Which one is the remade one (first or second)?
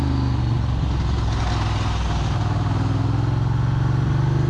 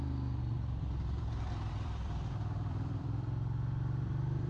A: second